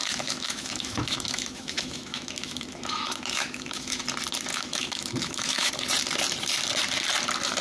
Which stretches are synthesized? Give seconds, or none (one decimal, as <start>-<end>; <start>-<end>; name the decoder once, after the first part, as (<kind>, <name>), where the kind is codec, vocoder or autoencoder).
0.0-4.0 (autoencoder, DAC-VAE); 4.5-5.7